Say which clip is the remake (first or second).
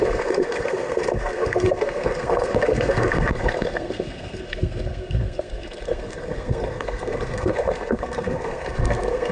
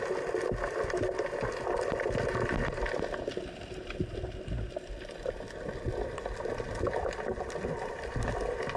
first